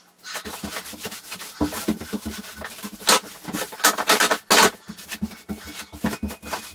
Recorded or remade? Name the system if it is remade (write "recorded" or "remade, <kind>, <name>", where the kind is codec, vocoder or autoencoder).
recorded